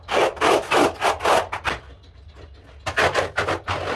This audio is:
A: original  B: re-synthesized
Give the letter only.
A